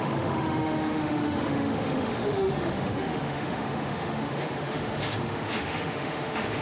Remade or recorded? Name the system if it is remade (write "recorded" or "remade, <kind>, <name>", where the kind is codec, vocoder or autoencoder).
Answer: remade, autoencoder, DAC-VAE